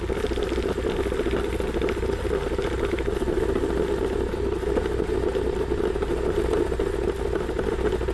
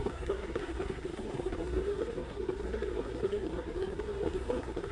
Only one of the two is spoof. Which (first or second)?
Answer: second